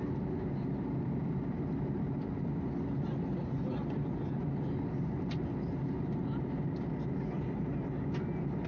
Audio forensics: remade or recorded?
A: recorded